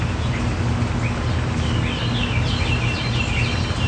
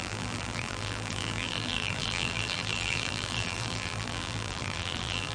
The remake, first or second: second